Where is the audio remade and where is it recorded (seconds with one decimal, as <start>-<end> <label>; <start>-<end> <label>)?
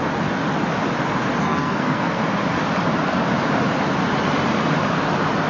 0.0-1.4 recorded; 1.4-2.2 remade; 2.2-5.5 recorded